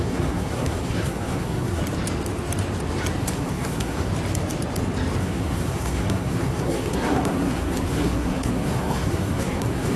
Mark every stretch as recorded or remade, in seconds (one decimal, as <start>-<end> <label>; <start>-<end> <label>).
0.0-1.8 remade; 1.8-3.2 recorded; 3.2-4.1 remade; 4.1-5.2 recorded; 5.2-10.0 remade